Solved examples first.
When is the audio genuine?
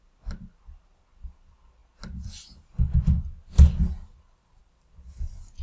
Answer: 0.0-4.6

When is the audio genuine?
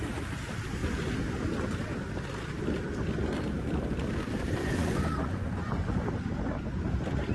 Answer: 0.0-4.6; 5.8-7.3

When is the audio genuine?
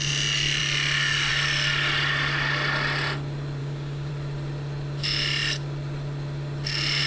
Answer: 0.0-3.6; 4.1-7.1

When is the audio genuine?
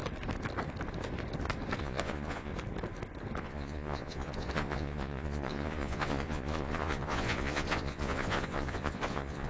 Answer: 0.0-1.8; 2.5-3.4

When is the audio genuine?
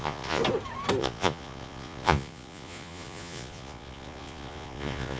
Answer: 0.4-1.0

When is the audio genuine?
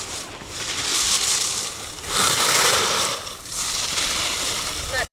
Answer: none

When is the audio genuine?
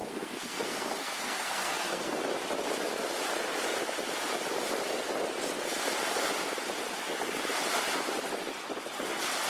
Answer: 2.2-9.5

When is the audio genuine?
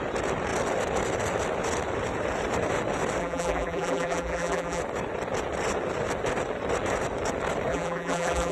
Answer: 0.0-3.2; 4.8-7.7